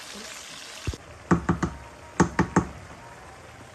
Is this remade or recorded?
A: recorded